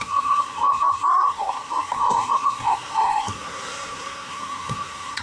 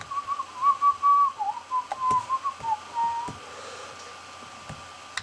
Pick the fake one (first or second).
first